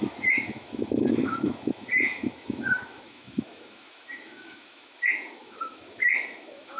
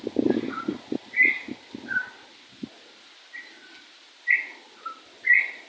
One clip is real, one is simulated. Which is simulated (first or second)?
first